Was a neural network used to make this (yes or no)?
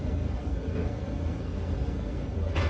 yes